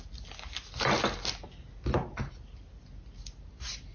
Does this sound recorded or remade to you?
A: recorded